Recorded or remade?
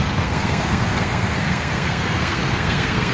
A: remade